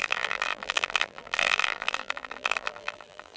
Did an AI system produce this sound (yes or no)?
yes